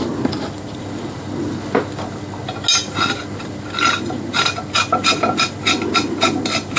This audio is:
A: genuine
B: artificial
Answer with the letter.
A